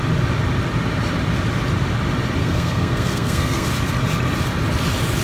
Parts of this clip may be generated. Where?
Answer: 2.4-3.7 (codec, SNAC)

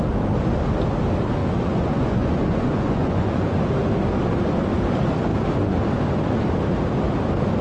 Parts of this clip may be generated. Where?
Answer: 1.4-3.6 (vocoder, Vocos)

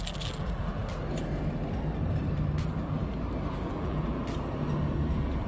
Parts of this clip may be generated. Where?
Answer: 0.0-0.8 (vocoder, BigVGAN v2); 2.6-3.0; 3.5-4.2; 5.1-5.5

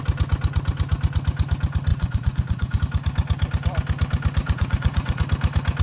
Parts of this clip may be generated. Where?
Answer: 1.9-2.8 (vocoder, Vocos); 4.4-5.2